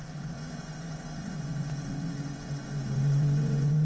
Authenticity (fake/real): fake